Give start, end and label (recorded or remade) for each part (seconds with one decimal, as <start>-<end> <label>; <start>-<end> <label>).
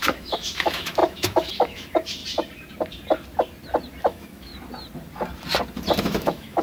0.0-2.2 remade; 2.2-4.0 recorded; 4.0-4.5 remade; 4.5-6.0 recorded; 6.0-6.6 remade